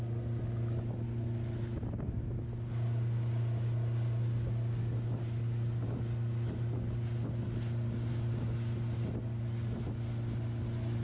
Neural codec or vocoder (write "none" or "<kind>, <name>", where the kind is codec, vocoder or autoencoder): none